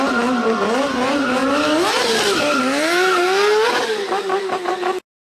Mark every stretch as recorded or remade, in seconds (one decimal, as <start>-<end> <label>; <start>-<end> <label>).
0.0-5.3 recorded